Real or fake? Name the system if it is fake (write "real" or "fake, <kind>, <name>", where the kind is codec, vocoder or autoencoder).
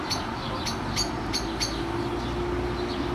real